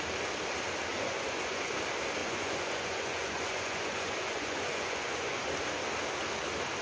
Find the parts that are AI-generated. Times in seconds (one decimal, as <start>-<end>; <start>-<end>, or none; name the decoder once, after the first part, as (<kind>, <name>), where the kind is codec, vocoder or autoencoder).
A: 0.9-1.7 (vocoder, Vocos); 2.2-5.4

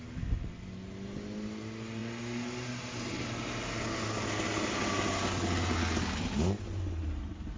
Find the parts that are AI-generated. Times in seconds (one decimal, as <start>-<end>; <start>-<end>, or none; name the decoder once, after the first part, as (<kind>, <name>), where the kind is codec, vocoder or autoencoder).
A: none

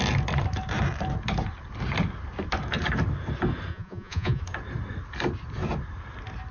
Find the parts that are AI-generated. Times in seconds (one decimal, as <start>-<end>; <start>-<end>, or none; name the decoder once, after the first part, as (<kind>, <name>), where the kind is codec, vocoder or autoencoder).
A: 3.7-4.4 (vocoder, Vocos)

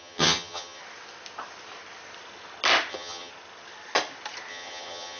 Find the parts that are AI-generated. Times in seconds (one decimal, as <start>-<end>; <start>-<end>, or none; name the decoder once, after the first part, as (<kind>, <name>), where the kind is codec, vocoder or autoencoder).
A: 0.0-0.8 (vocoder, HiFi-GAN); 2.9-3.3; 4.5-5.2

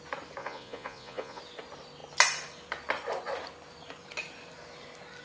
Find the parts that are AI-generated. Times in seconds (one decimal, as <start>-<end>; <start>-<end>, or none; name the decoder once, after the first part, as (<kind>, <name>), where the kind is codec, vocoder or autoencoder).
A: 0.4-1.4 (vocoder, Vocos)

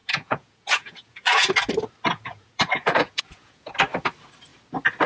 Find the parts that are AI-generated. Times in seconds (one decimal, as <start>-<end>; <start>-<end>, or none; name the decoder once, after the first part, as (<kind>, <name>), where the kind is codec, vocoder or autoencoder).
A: 0.0-1.5 (vocoder, Vocos); 2.1-3.7

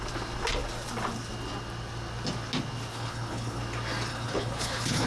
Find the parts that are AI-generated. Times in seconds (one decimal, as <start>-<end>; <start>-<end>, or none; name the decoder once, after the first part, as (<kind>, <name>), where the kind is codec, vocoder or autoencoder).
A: 2.9-3.6 (codec, HILCodec); 4.1-5.1

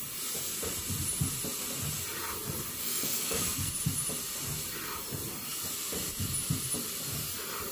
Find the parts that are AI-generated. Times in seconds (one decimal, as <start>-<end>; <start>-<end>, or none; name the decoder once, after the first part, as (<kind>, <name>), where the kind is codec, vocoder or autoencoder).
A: 2.8-3.7 (codec, SNAC)